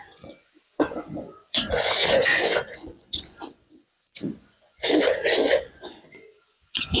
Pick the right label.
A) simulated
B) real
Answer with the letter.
A